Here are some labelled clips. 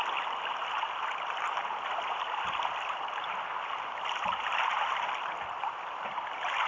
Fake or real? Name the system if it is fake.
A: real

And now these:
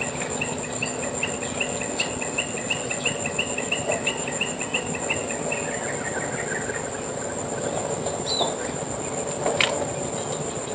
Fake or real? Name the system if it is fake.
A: real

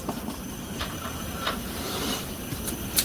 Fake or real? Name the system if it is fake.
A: fake, vocoder, BigVGAN v2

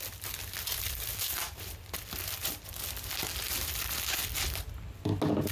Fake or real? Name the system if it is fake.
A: real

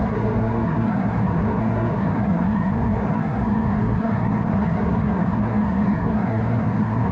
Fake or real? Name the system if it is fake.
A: fake, codec, SNAC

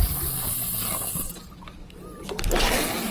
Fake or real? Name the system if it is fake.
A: real